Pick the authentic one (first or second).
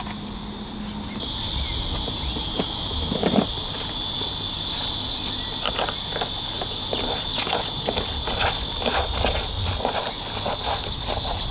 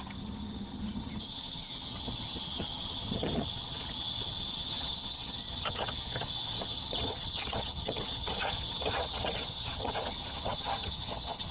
first